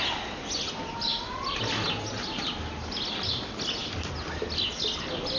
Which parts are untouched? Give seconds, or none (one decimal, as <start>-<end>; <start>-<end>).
0.0-5.4